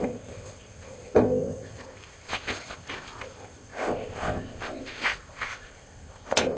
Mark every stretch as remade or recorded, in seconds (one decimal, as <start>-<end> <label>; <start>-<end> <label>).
0.0-6.6 remade